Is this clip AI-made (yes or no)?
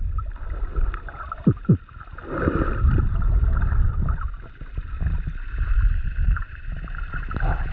no